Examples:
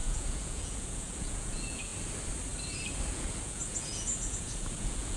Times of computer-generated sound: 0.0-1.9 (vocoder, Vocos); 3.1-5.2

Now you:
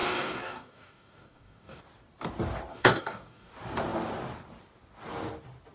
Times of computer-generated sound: 0.0-1.8 (codec, DAC); 2.7-3.5

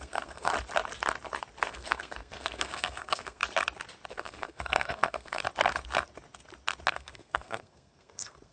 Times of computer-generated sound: 0.0-0.5 (codec, SNAC); 1.6-3.4; 4.1-5.4; 6.9-8.5

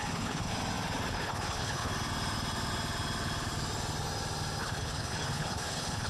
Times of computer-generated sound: 0.0-0.5 (codec, HILCodec); 1.1-1.9; 4.6-6.1

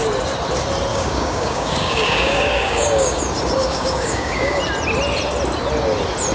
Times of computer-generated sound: 0.9-3.2 (codec, DAC); 3.6-4.6